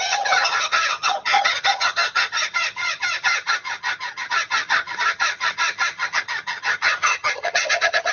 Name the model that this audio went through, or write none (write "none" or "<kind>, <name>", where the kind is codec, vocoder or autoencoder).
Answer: vocoder, HiFi-GAN